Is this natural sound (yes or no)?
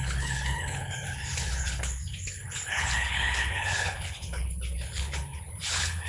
no